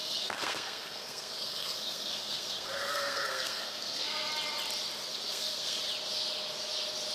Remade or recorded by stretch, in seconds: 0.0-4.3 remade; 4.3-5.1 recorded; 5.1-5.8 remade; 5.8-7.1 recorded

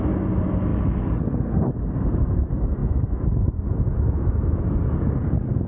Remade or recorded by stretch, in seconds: 0.0-2.8 recorded; 2.8-4.6 remade; 4.6-5.7 recorded

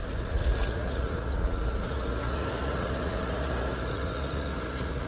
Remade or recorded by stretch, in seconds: 0.0-5.1 remade